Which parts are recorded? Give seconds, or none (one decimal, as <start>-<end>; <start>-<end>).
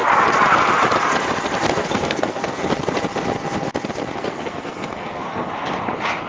0.0-1.8; 2.6-4.2; 5.5-6.3